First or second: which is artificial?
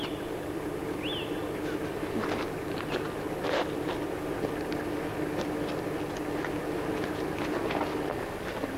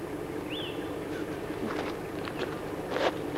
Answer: second